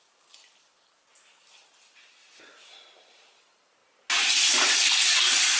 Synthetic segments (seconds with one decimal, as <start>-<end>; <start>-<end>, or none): none